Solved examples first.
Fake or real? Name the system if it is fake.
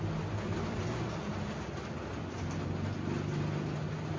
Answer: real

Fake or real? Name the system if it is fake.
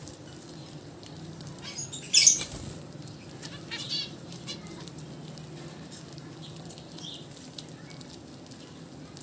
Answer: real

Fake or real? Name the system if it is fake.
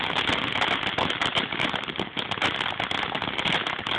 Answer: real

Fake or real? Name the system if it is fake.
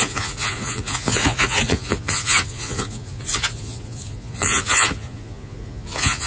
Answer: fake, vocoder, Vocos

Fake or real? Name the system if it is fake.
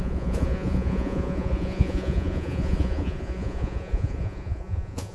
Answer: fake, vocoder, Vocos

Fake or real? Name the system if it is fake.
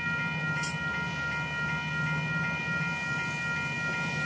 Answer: real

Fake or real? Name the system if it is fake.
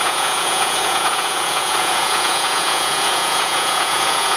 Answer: fake, vocoder, Vocos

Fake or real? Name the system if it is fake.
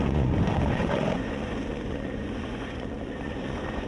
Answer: fake, vocoder, Vocos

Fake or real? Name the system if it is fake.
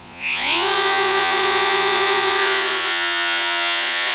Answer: fake, vocoder, Vocos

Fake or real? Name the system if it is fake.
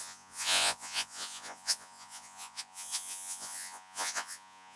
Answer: fake, vocoder, Vocos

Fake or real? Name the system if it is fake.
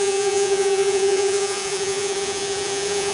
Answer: fake, vocoder, Vocos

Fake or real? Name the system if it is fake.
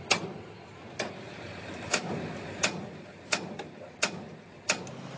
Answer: real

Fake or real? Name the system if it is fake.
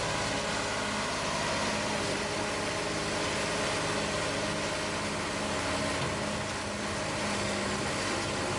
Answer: real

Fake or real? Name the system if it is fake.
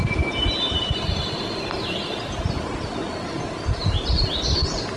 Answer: real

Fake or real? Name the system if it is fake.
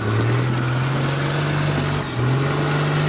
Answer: real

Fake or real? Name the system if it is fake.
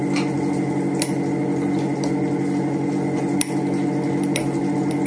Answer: real